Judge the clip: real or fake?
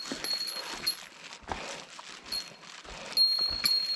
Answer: real